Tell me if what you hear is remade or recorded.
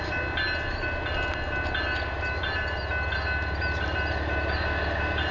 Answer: recorded